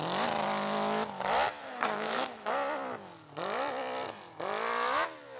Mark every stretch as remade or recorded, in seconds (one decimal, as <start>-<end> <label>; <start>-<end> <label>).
0.0-1.6 recorded; 1.6-2.5 remade; 2.5-5.4 recorded

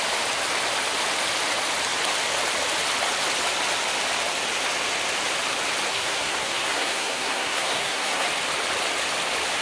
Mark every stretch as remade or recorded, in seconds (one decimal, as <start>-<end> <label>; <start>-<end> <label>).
0.0-5.9 recorded; 5.9-8.3 remade; 8.3-9.6 recorded

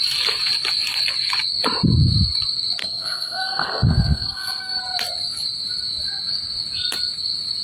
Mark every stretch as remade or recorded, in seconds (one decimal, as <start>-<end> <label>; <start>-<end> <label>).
0.0-2.8 recorded; 2.8-4.8 remade; 4.8-7.6 recorded

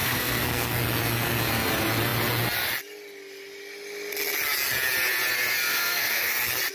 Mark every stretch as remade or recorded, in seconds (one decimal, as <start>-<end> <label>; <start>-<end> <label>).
0.0-0.8 remade; 0.8-5.7 recorded; 5.7-6.3 remade; 6.3-6.7 recorded

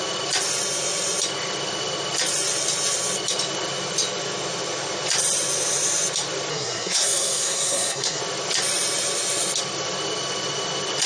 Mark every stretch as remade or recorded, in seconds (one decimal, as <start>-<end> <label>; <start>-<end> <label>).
0.0-6.5 recorded; 6.5-8.2 remade; 8.2-11.1 recorded

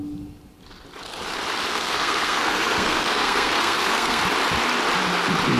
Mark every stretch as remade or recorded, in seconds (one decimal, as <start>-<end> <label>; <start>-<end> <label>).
0.0-1.7 recorded; 1.7-4.2 remade; 4.2-5.6 recorded

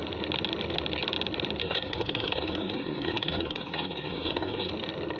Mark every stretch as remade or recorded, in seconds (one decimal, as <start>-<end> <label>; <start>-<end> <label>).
0.0-1.6 recorded; 1.6-4.7 remade; 4.7-5.2 recorded